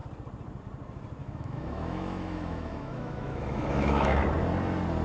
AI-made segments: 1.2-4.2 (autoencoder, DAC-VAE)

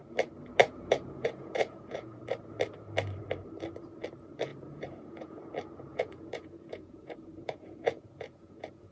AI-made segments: 0.6-2.2 (vocoder, Vocos); 4.5-5.4; 5.9-8.9

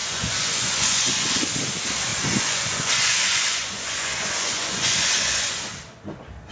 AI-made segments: 0.0-1.5 (vocoder, Vocos); 2.1-5.7

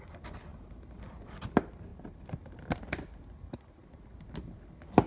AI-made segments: 0.5-1.0 (vocoder, BigVGAN v2)

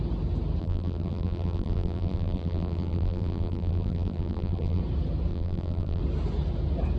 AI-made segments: 0.6-4.8 (vocoder, BigVGAN v2); 5.3-6.0

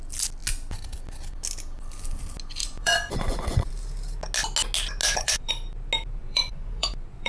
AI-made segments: 2.6-3.7 (vocoder, Vocos); 5.0-5.5; 6.2-7.3